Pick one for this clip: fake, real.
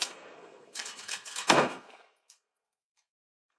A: fake